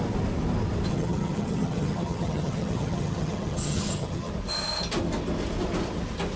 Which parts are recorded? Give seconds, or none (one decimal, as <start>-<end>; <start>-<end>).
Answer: 0.0-0.9; 4.3-6.4